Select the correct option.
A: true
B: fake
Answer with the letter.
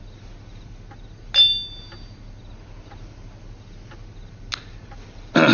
A